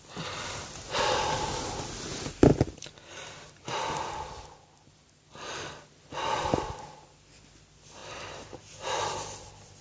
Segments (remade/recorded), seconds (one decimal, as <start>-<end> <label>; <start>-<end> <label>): 0.0-9.8 recorded

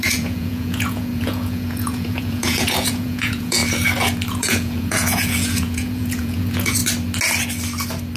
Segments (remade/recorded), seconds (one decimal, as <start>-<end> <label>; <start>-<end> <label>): 0.0-3.6 remade; 3.6-4.3 recorded; 4.3-6.8 remade; 6.8-8.2 recorded

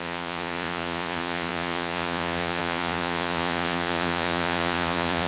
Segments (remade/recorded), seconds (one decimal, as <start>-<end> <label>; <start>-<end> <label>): 0.0-5.3 remade

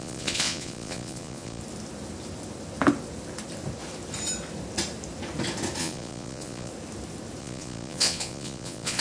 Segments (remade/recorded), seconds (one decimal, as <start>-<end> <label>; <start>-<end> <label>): 0.0-1.6 remade; 1.6-5.8 recorded; 5.8-6.7 remade; 6.7-7.4 recorded; 7.4-9.0 remade